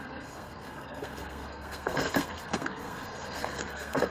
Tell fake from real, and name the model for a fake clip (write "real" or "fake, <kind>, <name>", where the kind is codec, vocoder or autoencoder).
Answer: fake, codec, SNAC